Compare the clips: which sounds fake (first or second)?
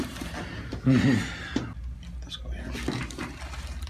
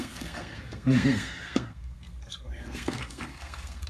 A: second